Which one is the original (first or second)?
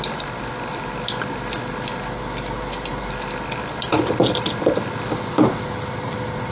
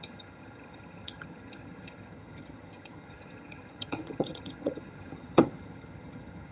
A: first